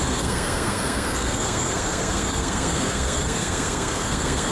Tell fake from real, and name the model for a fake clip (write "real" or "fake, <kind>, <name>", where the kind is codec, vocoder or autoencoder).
fake, codec, SNAC